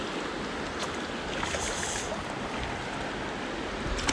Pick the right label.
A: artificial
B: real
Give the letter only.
B